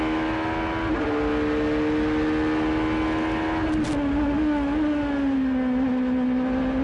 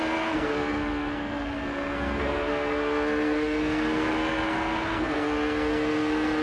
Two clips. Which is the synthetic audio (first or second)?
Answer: second